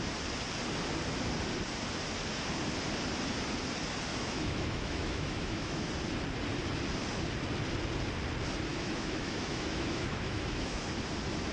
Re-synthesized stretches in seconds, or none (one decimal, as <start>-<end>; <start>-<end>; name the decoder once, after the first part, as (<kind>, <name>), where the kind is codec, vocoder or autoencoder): 4.1-5.9 (autoencoder, DAC-VAE); 8.7-10.9